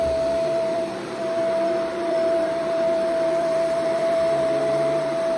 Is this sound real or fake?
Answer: fake